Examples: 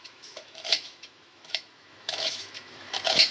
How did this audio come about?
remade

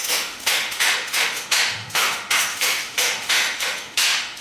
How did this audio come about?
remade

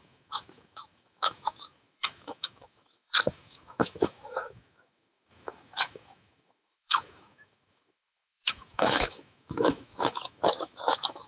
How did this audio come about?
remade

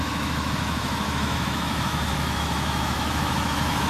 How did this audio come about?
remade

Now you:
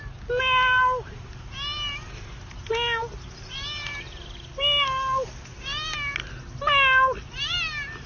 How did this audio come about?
recorded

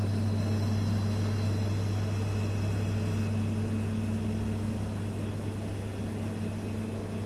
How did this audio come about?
recorded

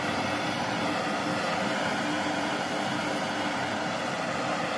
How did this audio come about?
recorded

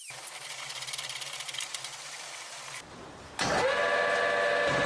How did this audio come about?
recorded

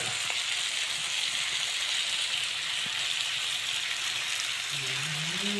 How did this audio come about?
recorded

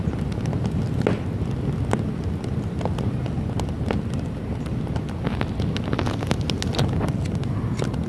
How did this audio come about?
recorded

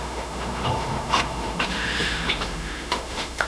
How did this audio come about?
remade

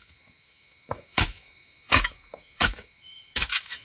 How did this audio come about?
remade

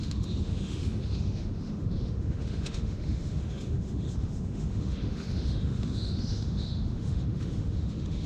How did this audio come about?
remade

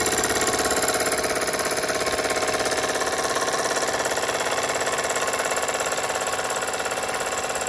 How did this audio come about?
recorded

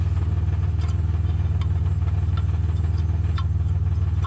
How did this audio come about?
recorded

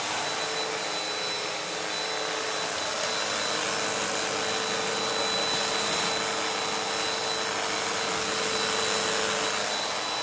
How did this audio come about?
recorded